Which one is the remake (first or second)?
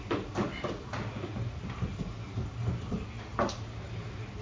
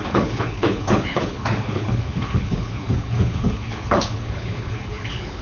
second